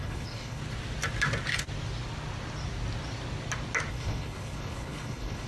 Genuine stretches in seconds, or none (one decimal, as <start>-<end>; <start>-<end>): 0.6-3.9